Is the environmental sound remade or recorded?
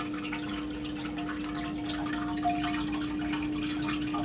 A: recorded